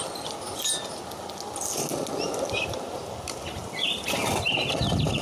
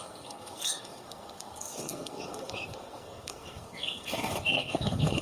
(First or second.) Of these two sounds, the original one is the first